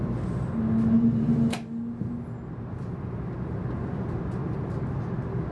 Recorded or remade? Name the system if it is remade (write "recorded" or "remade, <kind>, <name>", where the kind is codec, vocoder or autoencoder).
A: recorded